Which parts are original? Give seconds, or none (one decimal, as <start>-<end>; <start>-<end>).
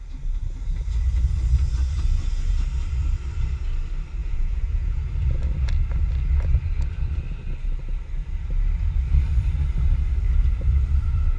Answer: 0.0-4.2; 5.1-11.4